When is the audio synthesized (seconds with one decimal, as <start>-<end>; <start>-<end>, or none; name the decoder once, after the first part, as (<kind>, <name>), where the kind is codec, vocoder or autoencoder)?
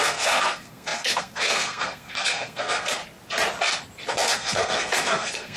0.0-3.0 (codec, SNAC); 4.1-5.6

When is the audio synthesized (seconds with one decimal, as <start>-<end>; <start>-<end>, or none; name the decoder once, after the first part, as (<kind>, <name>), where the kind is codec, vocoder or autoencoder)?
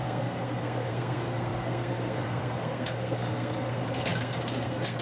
0.0-5.0 (codec, SNAC)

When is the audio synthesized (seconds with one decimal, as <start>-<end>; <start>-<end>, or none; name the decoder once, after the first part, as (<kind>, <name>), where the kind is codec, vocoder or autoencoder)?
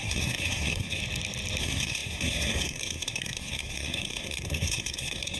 0.0-1.0 (codec, SNAC); 1.6-5.4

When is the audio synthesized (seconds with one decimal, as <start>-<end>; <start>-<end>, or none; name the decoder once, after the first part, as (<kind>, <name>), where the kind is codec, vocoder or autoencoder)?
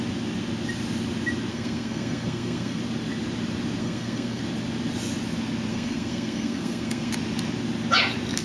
1.5-2.8 (codec, SNAC); 3.8-4.4; 5.7-7.1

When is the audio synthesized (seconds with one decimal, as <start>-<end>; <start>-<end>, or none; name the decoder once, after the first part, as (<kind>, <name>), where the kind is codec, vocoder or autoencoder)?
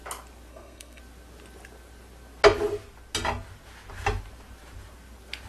0.5-1.0 (codec, SNAC)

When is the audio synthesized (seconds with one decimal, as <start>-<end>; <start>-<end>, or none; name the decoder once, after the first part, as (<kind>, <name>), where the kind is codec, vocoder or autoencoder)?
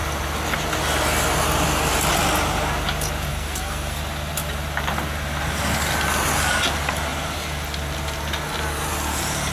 3.3-4.0 (codec, SNAC)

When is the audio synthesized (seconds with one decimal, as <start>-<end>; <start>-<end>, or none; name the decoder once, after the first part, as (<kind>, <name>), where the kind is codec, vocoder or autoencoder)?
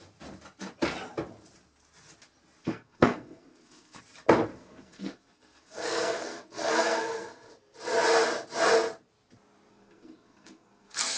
2.6-4.0 (codec, SNAC); 4.5-7.5; 9.7-11.2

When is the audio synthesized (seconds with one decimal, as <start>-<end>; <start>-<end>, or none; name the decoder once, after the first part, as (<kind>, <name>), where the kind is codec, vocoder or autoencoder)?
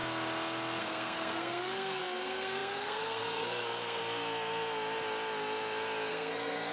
0.8-4.0 (codec, SNAC); 6.1-6.7